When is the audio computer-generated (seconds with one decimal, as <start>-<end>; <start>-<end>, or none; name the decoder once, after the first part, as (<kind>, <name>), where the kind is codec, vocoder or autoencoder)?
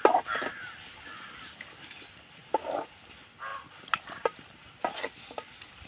3.5-4.1 (vocoder, BigVGAN v2)